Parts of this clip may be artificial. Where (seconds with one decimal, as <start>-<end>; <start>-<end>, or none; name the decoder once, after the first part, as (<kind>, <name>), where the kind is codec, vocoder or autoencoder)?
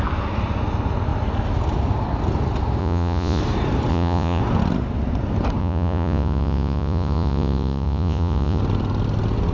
2.8-3.4 (vocoder, Vocos); 3.9-4.4; 5.6-8.6